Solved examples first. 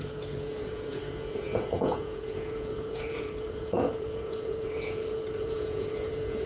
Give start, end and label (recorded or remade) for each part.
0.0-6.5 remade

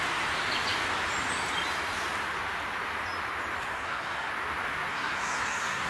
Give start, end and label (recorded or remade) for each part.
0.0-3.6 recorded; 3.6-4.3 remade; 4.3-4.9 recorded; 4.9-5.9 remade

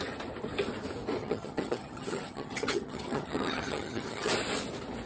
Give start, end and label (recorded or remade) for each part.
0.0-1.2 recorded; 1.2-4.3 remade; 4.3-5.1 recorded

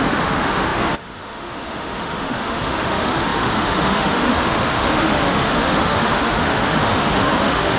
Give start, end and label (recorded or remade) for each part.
0.0-7.8 remade